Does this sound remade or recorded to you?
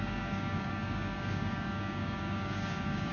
remade